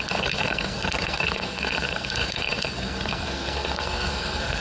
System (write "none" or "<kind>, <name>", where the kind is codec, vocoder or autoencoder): codec, SNAC